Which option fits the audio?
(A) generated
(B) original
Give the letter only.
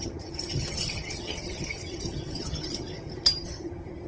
A